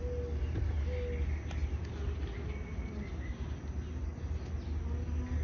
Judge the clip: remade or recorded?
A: recorded